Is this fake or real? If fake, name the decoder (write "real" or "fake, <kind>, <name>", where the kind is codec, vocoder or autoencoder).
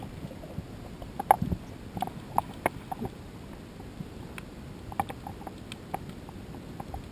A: real